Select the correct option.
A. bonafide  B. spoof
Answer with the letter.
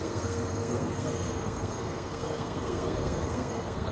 B